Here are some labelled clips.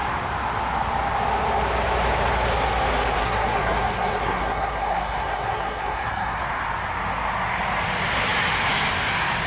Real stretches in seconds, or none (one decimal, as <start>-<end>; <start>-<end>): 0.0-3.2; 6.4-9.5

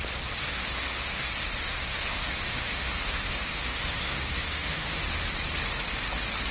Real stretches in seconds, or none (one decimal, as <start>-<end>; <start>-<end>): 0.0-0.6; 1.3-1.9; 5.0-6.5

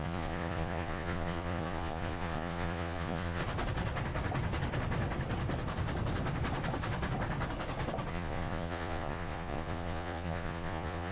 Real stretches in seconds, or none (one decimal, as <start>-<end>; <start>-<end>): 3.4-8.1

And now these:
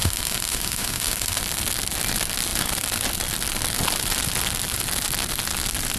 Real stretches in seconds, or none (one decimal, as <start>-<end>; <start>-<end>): 1.4-6.0

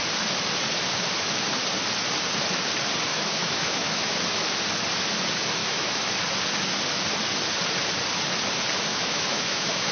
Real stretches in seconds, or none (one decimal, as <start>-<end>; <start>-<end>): 0.0-3.1; 4.1-5.6; 6.1-8.9